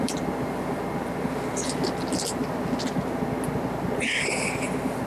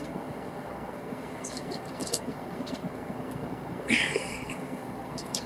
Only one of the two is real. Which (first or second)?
first